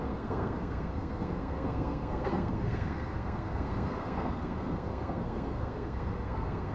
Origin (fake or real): fake